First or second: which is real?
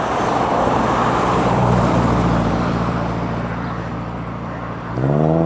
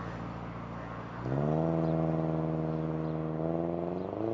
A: second